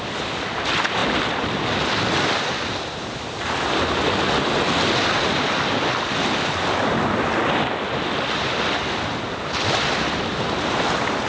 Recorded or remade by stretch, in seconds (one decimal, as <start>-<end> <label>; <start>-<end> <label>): 0.0-11.3 recorded